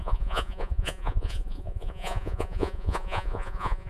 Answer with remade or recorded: remade